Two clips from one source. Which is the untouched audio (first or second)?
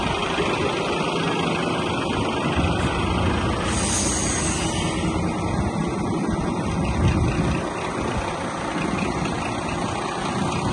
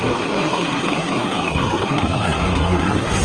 first